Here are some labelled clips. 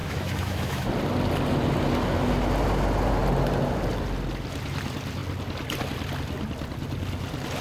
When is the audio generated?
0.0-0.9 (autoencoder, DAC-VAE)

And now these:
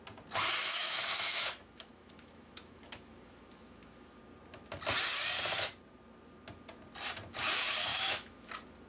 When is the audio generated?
0.6-4.2 (autoencoder, DAC-VAE); 7.9-8.5

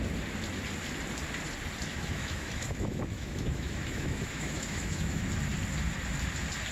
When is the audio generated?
1.9-5.3 (autoencoder, DAC-VAE)

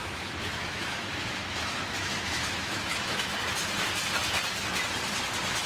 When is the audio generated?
0.0-3.4 (autoencoder, DAC-VAE)

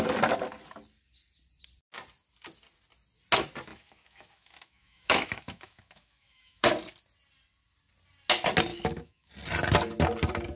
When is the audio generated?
3.7-6.7 (autoencoder, DAC-VAE); 8.7-9.3

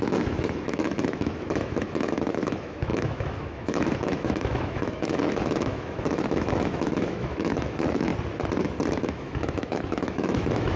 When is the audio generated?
0.0-8.1 (autoencoder, DAC-VAE); 8.9-10.8

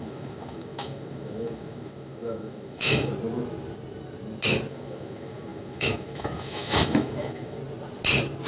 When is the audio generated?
0.0-3.1 (autoencoder, DAC-VAE); 4.7-7.6

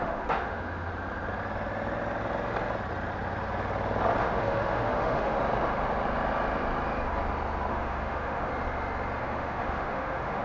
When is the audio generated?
0.0-0.9 (autoencoder, DAC-VAE); 4.2-5.4; 7.7-8.5; 9.2-10.4